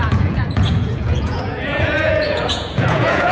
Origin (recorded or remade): remade